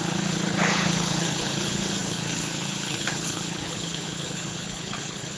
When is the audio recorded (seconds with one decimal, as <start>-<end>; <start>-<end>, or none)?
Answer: none